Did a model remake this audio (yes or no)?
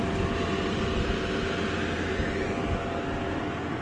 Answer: no